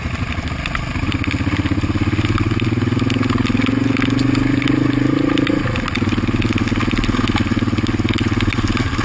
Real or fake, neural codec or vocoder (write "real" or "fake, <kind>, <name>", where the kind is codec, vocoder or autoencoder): real